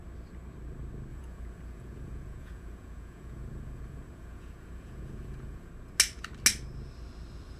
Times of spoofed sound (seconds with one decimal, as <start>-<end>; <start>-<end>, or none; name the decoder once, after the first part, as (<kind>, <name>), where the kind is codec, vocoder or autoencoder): 1.1-5.7 (vocoder, Vocos)